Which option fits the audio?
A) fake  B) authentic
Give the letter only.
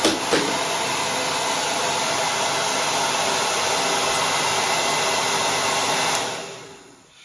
B